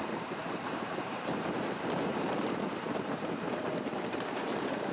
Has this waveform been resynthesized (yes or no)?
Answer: yes